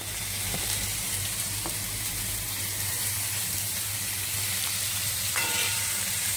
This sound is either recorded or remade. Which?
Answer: remade